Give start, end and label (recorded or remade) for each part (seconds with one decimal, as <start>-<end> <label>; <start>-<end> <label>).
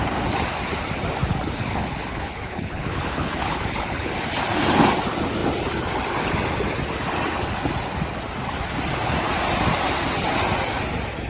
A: 0.0-1.3 recorded; 1.3-4.1 remade; 4.1-11.3 recorded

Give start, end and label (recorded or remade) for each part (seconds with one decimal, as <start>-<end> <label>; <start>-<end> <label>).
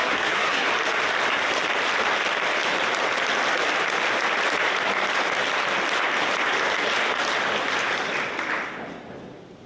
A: 0.0-0.7 remade; 0.7-9.7 recorded